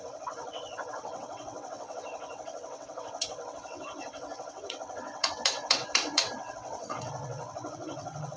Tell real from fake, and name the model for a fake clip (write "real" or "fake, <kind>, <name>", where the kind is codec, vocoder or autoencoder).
fake, vocoder, WaveNeXt